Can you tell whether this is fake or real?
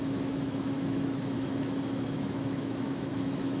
fake